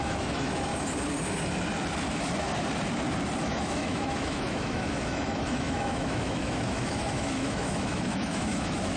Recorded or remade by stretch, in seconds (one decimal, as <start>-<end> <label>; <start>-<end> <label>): 0.0-0.7 remade; 0.7-3.4 recorded; 3.4-9.0 remade